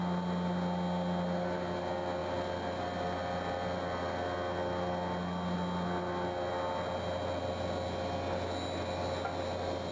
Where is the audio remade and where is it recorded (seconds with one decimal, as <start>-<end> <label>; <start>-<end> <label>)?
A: 0.0-9.9 recorded